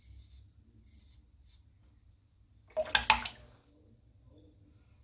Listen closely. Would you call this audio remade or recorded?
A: recorded